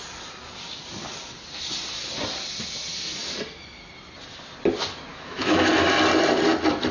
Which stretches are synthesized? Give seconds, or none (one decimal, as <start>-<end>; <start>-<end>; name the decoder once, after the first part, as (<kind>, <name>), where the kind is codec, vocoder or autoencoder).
5.1-5.7 (autoencoder, DAC-VAE)